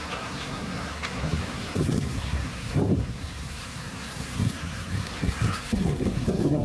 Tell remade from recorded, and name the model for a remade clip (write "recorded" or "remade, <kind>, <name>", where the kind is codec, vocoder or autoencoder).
remade, codec, SNAC